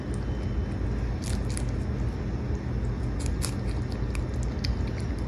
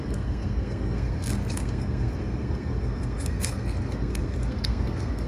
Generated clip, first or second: second